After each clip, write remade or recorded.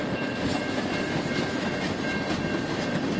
recorded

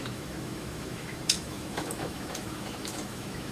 remade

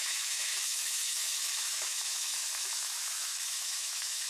remade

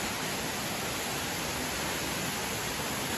recorded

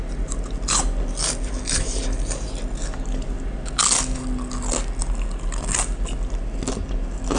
recorded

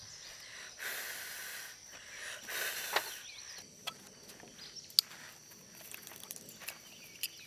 recorded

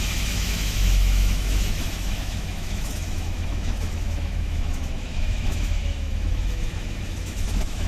remade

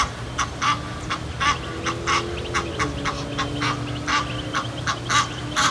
recorded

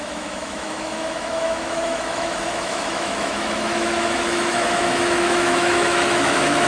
remade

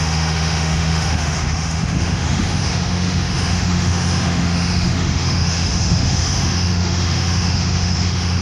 remade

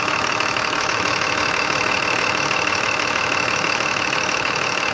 remade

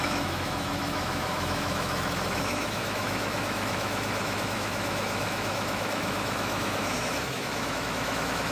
remade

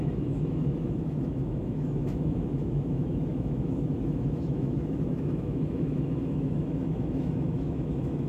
remade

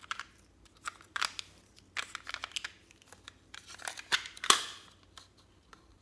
recorded